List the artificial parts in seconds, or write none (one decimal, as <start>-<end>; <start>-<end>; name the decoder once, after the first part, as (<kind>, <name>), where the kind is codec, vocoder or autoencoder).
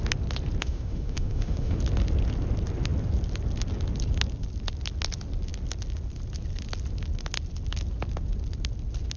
0.6-1.8 (autoencoder, DAC-VAE)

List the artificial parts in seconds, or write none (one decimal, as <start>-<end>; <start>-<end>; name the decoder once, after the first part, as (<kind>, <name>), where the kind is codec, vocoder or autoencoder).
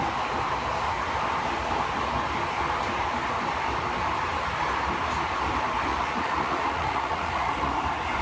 5.9-7.7 (vocoder, Vocos)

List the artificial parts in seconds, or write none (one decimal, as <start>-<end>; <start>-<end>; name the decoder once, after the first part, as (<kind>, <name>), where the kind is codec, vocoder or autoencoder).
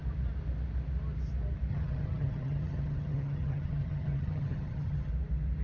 1.7-5.1 (vocoder, HiFi-GAN)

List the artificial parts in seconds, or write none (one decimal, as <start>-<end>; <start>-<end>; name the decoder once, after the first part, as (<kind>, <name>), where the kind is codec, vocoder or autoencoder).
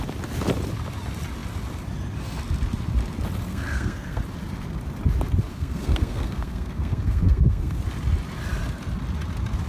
3.5-4.2 (codec, SNAC); 5.5-7.8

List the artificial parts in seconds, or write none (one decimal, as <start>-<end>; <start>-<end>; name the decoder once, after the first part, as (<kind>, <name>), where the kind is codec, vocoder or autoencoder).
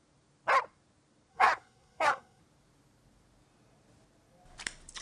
1.3-2.4 (codec, SNAC)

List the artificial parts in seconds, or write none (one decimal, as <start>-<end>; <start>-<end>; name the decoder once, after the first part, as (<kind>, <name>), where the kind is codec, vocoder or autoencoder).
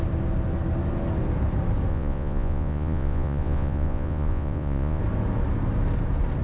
1.9-5.0 (vocoder, Vocos)